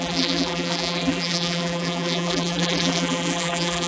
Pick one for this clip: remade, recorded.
remade